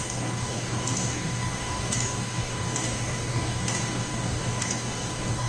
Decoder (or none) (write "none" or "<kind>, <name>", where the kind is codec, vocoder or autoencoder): codec, DAC